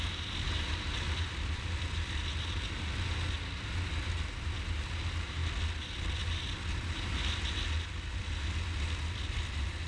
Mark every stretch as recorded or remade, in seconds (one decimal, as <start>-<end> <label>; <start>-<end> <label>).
0.0-9.9 recorded